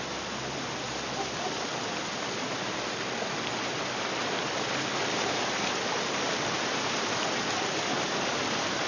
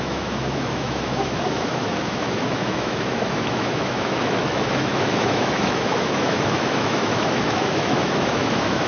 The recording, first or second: first